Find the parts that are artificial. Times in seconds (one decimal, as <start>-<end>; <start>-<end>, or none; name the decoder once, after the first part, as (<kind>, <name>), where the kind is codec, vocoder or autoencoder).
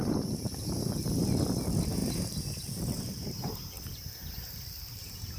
0.0-1.2 (vocoder, BigVGAN v2); 2.0-5.4